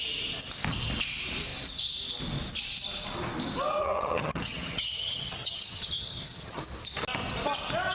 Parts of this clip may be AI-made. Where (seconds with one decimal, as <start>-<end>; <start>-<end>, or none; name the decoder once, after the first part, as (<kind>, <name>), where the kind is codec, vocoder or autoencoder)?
3.8-6.6 (vocoder, HiFi-GAN)